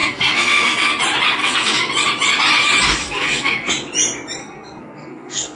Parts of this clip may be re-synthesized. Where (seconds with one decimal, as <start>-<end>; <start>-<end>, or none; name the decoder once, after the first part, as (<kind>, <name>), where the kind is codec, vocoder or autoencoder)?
0.0-1.0 (codec, SNAC); 1.4-1.9; 3.0-3.7; 4.4-5.6